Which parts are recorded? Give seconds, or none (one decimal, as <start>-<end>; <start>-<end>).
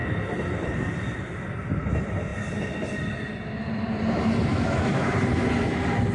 0.0-4.5; 5.1-6.1